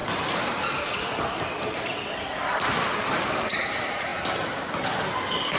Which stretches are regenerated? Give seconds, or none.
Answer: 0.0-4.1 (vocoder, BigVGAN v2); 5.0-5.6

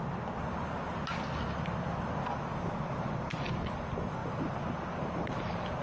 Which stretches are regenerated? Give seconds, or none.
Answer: none

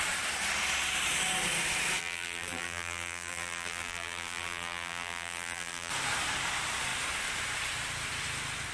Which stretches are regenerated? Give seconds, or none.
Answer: 2.0-5.9 (vocoder, BigVGAN v2)

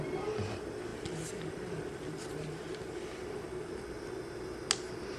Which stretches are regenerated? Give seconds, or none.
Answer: 0.9-3.7 (vocoder, BigVGAN v2)

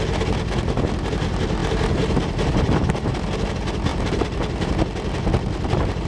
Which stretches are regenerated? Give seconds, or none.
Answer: 1.6-3.5 (vocoder, BigVGAN v2); 3.9-4.7

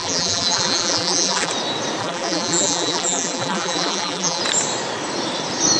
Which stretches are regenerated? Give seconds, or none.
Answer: 0.0-1.5 (vocoder, BigVGAN v2); 2.0-4.4

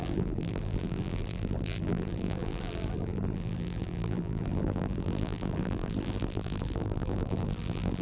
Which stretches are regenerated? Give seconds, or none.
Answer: 0.0-8.0 (vocoder, BigVGAN v2)

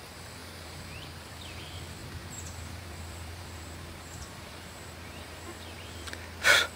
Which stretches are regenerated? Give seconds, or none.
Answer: 0.4-1.3 (vocoder, BigVGAN v2); 2.0-6.1